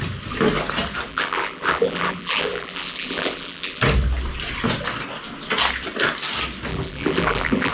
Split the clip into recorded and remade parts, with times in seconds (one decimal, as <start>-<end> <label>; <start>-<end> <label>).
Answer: 0.0-1.1 recorded; 1.1-3.8 remade; 3.8-6.7 recorded; 6.7-7.7 remade